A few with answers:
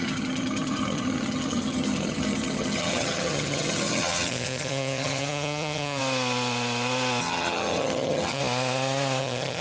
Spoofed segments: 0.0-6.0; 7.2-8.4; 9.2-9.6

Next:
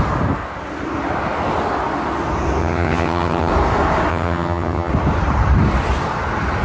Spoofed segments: 2.6-3.5; 4.1-4.9

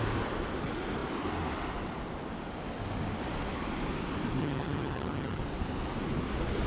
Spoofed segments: 4.4-5.4

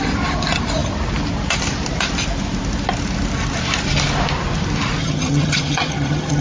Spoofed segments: 5.0-6.4

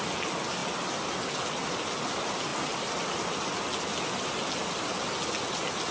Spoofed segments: none

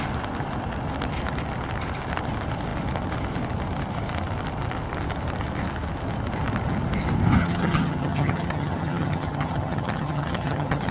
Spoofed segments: 7.4-10.9